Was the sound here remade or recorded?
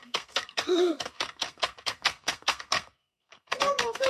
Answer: remade